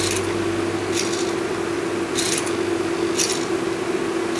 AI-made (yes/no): no